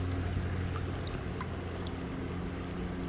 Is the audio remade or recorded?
recorded